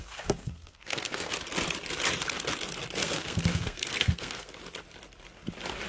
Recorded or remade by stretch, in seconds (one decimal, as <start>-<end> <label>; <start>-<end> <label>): 0.0-1.3 remade; 1.3-3.0 recorded; 3.0-4.5 remade; 4.5-5.9 recorded